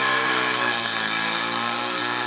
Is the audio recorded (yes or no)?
no